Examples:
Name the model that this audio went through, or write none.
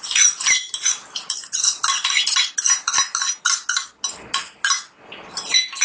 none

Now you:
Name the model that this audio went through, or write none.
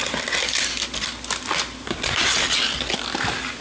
none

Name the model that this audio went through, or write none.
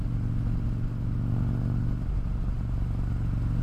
none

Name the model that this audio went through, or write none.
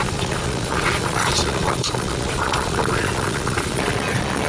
vocoder, Vocos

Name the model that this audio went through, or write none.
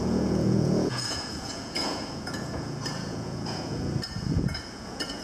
vocoder, Vocos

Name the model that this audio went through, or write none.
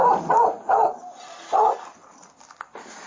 none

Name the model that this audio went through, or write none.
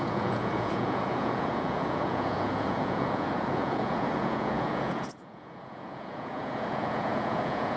vocoder, Vocos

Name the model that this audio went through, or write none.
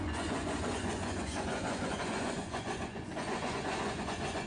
vocoder, Vocos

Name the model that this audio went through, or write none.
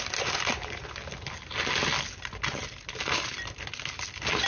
none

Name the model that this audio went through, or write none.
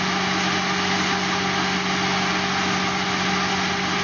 none